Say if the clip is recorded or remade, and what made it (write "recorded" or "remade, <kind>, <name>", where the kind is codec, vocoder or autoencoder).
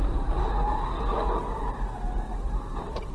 recorded